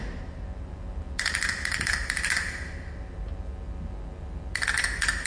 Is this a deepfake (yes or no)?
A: no